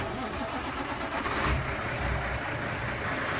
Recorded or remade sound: recorded